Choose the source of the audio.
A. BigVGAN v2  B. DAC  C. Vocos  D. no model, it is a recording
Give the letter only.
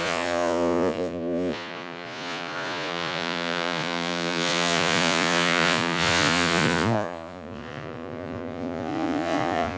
C